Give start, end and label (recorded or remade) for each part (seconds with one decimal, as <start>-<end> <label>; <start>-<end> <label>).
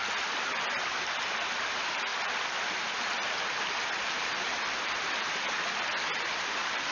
0.0-6.9 recorded